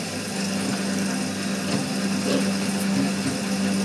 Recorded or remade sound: recorded